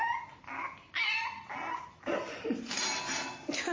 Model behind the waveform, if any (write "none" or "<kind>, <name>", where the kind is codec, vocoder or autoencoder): none